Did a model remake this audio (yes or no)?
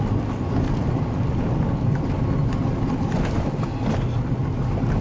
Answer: no